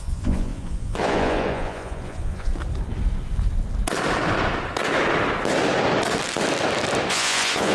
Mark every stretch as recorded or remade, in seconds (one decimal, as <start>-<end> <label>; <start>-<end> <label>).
0.0-2.5 remade; 2.5-7.1 recorded; 7.1-7.7 remade